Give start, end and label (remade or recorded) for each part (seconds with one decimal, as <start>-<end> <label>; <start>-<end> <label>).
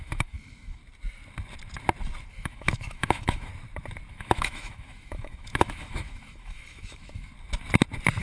0.0-0.8 remade; 0.8-2.3 recorded; 2.3-3.5 remade; 3.5-4.1 recorded; 4.1-7.3 remade; 7.3-8.2 recorded